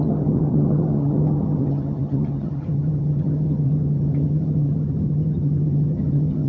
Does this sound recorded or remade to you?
remade